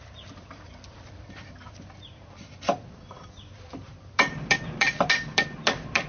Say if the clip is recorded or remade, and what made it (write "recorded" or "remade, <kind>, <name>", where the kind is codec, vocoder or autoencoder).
remade, vocoder, BigVGAN v2